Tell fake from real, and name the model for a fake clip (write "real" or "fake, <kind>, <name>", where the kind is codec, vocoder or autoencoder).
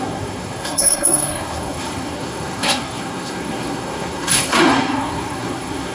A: fake, codec, SNAC